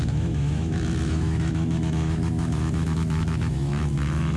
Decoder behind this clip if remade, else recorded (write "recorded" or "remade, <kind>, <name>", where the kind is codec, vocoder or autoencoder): remade, autoencoder, DAC-VAE